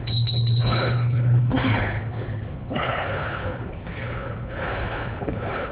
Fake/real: fake